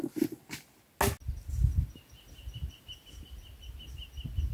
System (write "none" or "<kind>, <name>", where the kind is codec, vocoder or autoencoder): none